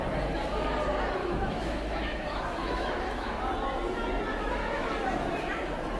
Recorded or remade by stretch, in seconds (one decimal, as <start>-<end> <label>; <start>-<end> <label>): 0.0-1.2 recorded; 1.2-3.4 remade; 3.4-4.3 recorded; 4.3-4.9 remade; 4.9-6.0 recorded